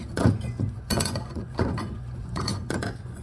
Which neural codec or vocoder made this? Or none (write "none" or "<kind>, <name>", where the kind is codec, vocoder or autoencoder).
vocoder, Vocos